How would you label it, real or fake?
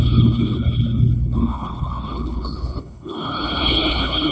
fake